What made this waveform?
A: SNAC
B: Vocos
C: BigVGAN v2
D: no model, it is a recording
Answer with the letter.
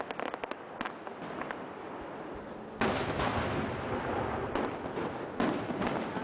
D